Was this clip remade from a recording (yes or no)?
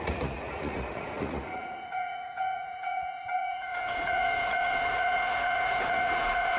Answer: yes